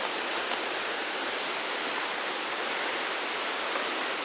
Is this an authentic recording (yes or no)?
yes